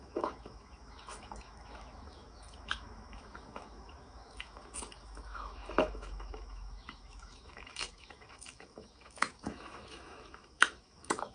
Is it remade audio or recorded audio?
remade